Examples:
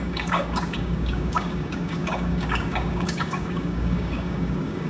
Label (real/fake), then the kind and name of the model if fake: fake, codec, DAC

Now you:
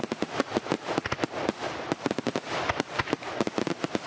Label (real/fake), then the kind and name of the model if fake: real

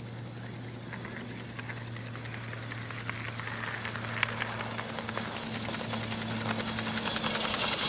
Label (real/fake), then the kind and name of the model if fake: real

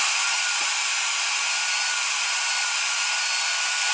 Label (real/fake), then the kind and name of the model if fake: real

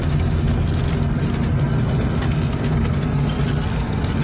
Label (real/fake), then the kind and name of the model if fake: real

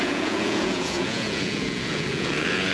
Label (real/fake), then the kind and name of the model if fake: fake, vocoder, Vocos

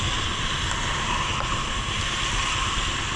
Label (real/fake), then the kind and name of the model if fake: real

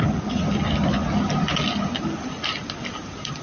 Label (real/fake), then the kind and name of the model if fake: real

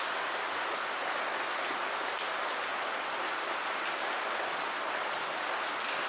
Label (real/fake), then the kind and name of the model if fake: real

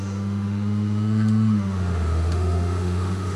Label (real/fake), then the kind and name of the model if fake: fake, autoencoder, DAC-VAE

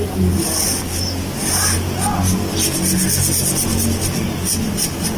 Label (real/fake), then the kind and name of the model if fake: real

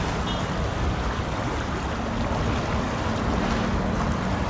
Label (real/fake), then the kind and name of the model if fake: real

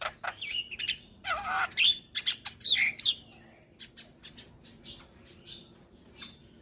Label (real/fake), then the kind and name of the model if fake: real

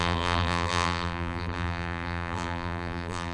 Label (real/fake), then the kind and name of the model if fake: fake, vocoder, BigVGAN v2